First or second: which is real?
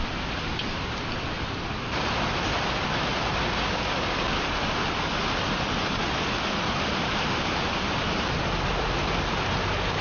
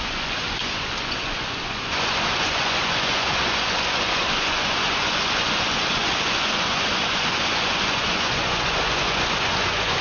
first